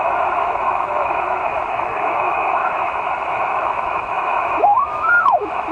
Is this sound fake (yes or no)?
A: yes